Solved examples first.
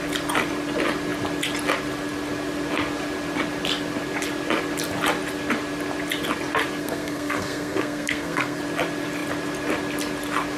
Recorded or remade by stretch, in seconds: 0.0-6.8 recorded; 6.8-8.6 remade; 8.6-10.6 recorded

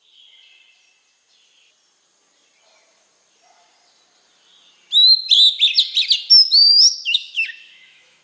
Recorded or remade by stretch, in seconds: 0.0-7.0 recorded; 7.0-8.2 remade

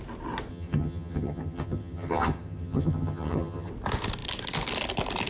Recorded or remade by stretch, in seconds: 0.0-0.5 recorded; 0.5-3.7 remade; 3.7-5.3 recorded

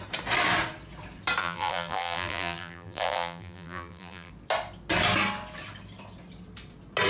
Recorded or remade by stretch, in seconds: 0.0-1.4 recorded; 1.4-4.3 remade; 4.3-7.1 recorded

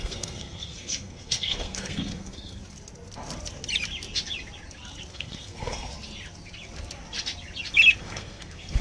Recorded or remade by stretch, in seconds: 0.0-2.6 remade; 2.6-5.1 recorded; 5.1-5.9 remade; 5.9-8.0 recorded; 8.0-8.8 remade

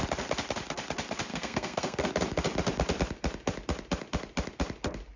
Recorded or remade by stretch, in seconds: 0.0-1.3 recorded; 1.3-2.1 remade; 2.1-5.2 recorded